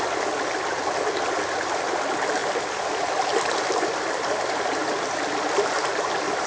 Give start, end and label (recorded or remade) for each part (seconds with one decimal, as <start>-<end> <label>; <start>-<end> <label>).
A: 0.0-6.5 recorded